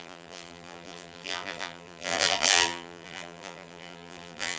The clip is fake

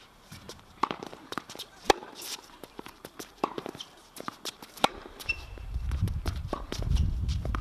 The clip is fake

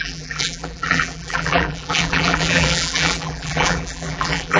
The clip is fake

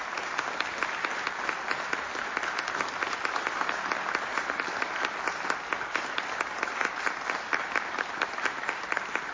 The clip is real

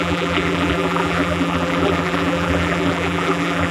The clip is fake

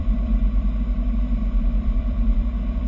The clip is fake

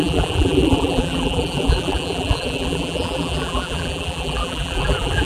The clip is fake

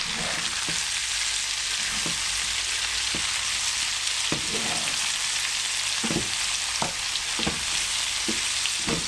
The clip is real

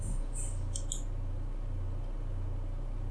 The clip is real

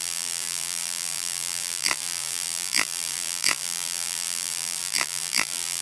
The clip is fake